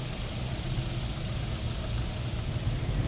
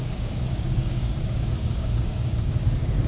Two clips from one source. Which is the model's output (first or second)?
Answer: second